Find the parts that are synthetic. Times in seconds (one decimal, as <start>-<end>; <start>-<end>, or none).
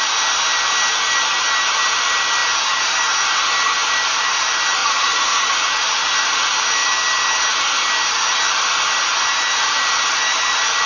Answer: 4.8-5.5